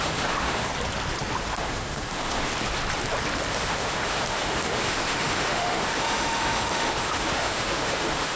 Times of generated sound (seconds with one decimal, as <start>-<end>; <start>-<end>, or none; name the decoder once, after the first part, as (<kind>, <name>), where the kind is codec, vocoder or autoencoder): 0.0-0.7 (autoencoder, DAC-VAE); 1.5-2.5; 3.5-8.4